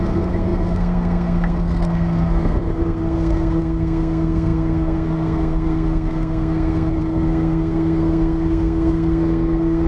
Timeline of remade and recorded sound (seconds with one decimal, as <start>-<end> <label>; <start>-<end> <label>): 0.0-9.9 remade